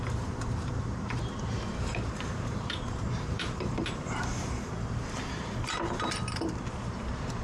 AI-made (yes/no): yes